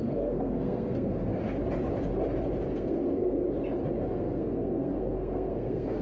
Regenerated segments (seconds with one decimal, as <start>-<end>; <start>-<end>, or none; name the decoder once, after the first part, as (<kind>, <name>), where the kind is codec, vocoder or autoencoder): 0.0-1.3 (codec, SNAC); 2.7-3.4; 4.1-6.0